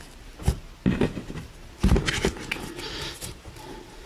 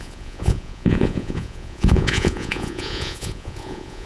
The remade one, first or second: second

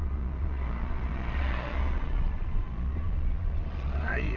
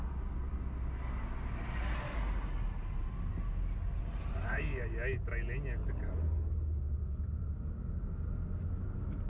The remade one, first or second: first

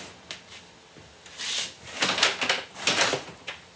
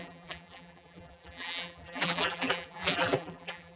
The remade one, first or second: second